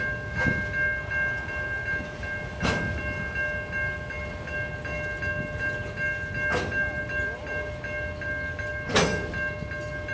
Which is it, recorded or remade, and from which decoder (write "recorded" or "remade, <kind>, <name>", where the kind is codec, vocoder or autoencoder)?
recorded